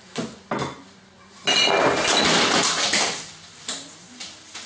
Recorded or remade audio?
recorded